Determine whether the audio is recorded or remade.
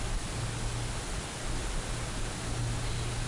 recorded